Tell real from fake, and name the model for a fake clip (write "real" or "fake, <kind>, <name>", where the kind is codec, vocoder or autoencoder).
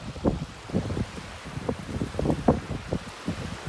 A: real